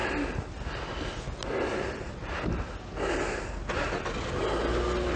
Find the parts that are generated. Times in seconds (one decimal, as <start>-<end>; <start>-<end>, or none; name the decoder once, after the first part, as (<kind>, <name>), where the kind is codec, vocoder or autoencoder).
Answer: none